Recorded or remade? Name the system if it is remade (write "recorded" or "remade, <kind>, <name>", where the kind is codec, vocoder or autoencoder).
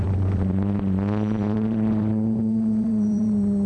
remade, vocoder, Vocos